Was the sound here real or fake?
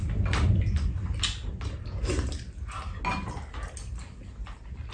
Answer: real